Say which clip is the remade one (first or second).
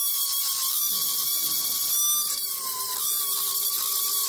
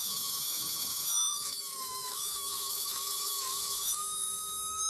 second